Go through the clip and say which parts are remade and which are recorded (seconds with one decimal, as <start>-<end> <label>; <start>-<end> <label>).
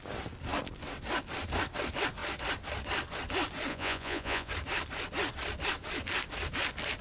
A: 0.0-3.7 recorded; 3.7-4.5 remade; 4.5-7.0 recorded